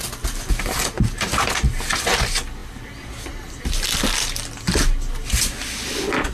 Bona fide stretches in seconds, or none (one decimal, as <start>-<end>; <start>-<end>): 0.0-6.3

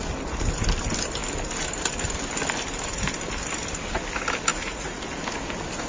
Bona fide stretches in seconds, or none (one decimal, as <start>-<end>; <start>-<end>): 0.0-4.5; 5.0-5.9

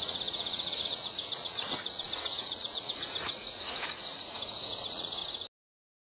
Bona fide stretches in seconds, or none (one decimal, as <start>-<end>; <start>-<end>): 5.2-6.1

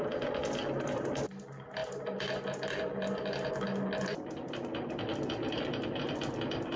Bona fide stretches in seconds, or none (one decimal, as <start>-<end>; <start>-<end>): 0.0-6.8

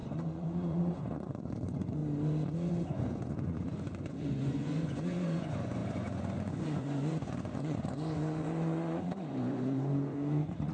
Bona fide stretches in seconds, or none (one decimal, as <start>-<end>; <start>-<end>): 2.0-2.7